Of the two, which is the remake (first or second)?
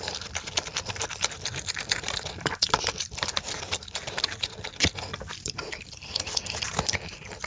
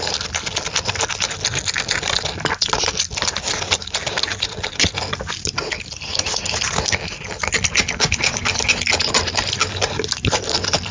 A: first